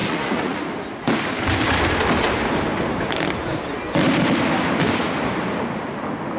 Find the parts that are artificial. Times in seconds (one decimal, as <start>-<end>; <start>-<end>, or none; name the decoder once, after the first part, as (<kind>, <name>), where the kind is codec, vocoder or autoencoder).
0.0-0.6 (vocoder, Vocos)